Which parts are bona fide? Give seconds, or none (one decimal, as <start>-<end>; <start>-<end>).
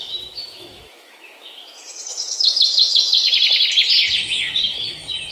3.1-4.2